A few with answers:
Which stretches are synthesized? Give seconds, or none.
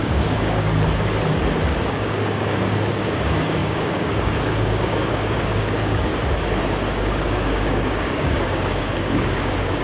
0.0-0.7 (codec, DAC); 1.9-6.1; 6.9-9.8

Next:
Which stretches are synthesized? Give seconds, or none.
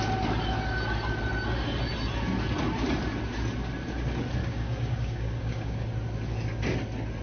4.4-5.8 (codec, DAC)